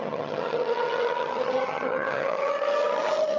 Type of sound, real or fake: fake